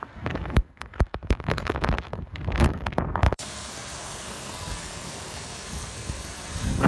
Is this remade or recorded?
remade